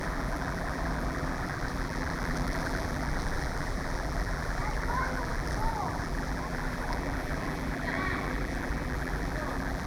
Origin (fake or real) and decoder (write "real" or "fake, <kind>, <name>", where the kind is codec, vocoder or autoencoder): fake, vocoder, BigVGAN v2